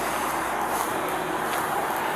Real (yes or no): yes